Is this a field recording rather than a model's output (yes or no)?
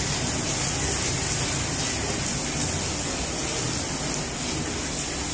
yes